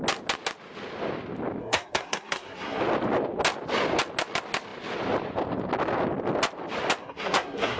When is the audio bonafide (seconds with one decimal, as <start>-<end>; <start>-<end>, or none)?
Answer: 0.0-1.6; 2.8-7.0